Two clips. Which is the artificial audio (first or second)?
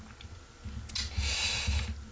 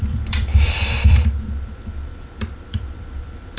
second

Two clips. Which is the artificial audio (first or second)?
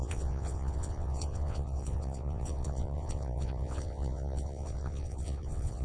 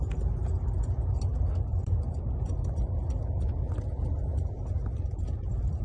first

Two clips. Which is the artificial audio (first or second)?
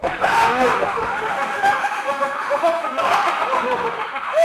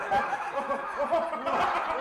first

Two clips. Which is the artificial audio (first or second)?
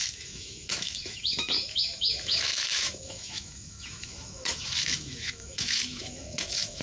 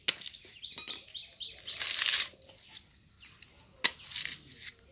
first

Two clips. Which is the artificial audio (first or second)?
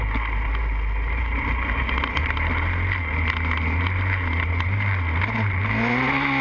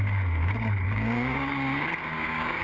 second